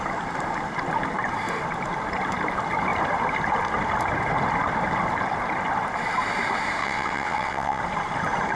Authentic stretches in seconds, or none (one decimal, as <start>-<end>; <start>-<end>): 0.0-6.8; 7.8-8.6